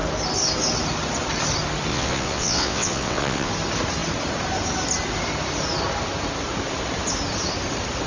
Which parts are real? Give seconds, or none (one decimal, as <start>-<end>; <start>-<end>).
0.0-1.9; 3.5-8.1